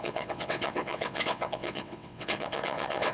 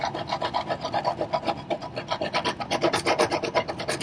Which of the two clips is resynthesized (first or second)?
first